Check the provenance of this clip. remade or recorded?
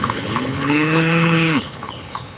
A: remade